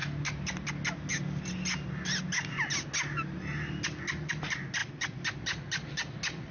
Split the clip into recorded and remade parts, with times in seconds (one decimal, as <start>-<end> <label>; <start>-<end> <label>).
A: 0.0-6.5 recorded